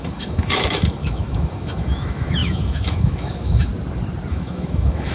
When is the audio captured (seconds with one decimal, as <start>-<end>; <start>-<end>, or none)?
3.7-4.3